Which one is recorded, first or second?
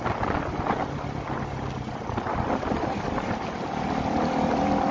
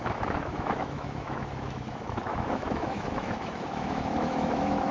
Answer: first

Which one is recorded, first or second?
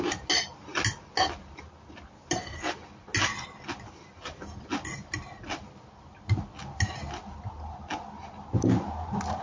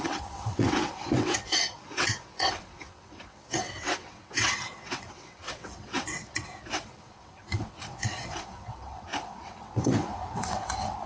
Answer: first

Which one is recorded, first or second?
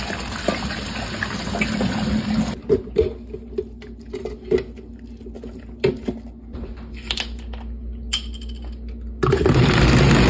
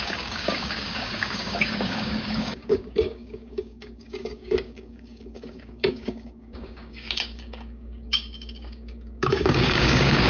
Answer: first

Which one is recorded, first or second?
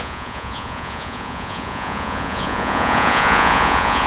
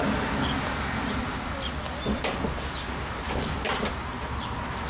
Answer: second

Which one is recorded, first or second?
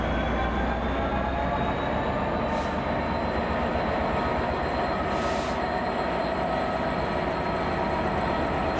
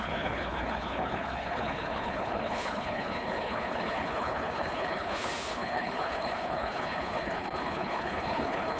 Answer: first